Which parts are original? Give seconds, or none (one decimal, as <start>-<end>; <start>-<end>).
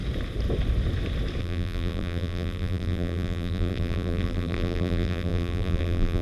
0.0-1.4